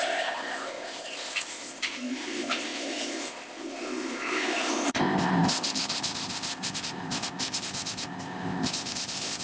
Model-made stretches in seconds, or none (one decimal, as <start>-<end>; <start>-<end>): 0.0-9.4